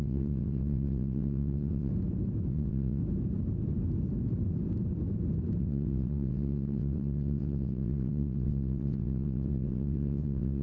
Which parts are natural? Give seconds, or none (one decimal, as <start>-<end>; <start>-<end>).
1.9-2.5; 3.0-5.6